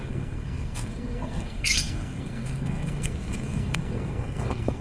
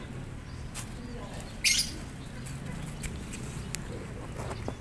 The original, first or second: second